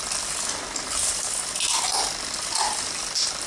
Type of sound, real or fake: real